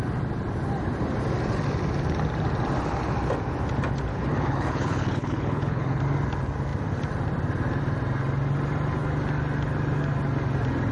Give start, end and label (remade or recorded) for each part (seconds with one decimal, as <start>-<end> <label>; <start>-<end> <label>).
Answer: 0.0-4.1 recorded; 4.1-6.0 remade; 6.0-10.9 recorded